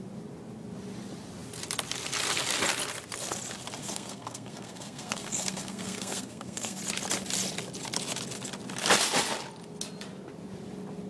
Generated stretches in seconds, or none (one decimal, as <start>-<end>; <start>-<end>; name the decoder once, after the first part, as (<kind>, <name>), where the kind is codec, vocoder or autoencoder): 3.8-6.8 (codec, SNAC)